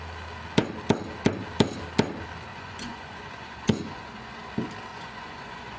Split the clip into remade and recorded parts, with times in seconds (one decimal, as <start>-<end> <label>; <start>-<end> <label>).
0.0-2.5 recorded; 2.5-4.5 remade; 4.5-4.9 recorded; 4.9-5.8 remade